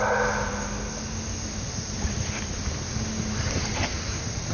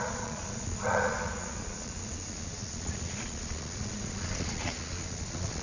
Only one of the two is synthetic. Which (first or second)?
second